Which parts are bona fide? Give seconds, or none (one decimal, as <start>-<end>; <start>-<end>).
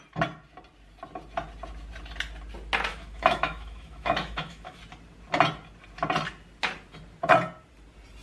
0.0-2.9; 4.8-8.2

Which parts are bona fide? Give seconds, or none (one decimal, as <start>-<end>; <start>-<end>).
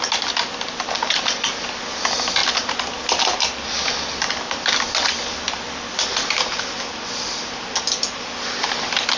0.0-9.2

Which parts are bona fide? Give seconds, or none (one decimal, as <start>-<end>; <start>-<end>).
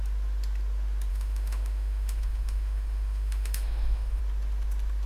0.0-1.1; 4.2-5.1